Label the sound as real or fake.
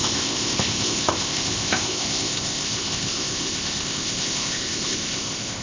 fake